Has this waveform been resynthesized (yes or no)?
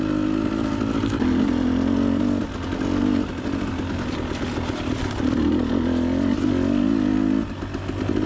no